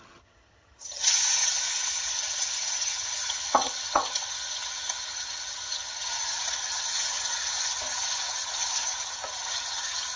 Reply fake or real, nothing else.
fake